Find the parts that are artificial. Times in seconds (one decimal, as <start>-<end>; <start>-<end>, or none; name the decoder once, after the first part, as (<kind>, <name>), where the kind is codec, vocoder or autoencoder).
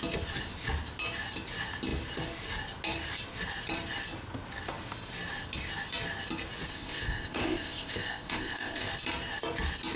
6.7-8.9 (codec, ZipCodec)